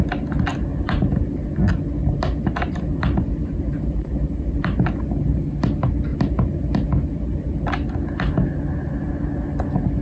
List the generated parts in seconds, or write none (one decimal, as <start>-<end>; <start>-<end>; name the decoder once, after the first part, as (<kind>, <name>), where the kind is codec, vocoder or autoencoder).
0.5-5.4 (vocoder, BigVGAN v2)